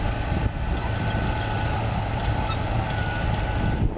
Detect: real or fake real